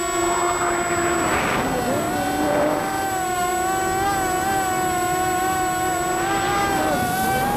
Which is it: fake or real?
real